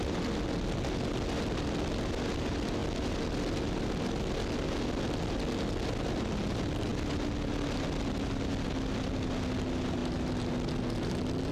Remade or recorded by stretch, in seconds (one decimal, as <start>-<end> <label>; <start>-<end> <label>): 0.0-11.5 recorded